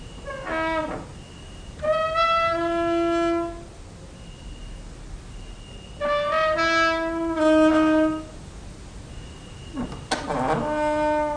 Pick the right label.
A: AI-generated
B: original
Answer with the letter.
B